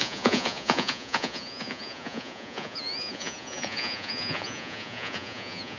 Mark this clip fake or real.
fake